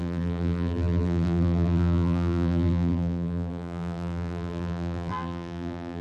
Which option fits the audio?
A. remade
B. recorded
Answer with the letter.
A